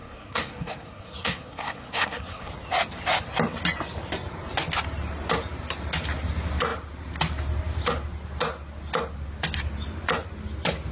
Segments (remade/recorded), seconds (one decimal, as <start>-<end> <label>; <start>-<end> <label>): 0.0-2.5 remade; 2.5-10.9 recorded